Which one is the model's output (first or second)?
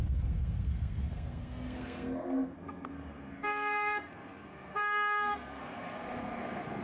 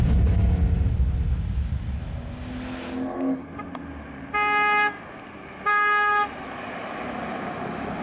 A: first